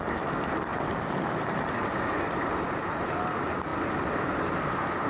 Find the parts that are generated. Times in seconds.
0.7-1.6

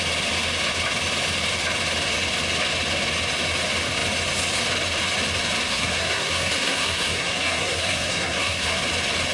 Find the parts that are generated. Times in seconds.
5.7-8.8

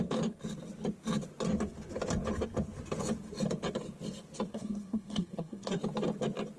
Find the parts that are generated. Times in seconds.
4.5-5.8

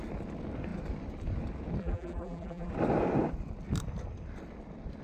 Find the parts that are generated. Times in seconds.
1.8-2.7

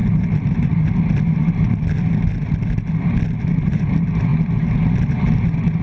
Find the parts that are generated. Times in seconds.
3.5-4.3; 5.1-5.8

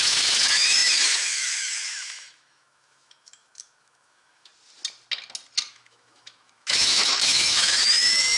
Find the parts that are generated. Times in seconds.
0.0-4.5; 5.7-8.4

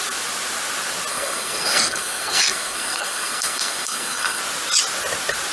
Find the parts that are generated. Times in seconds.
1.1-4.4

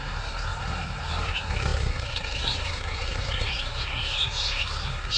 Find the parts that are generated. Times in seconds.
0.0-5.2